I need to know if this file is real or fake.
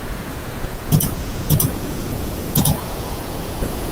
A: fake